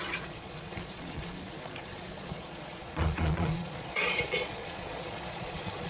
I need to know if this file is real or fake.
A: fake